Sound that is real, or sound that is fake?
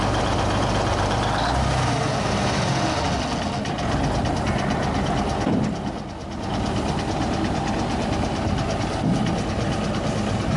real